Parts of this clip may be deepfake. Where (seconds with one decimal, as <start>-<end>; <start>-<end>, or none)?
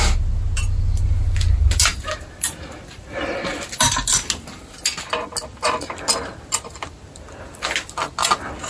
none